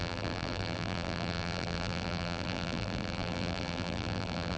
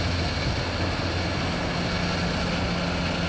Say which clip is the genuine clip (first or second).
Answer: second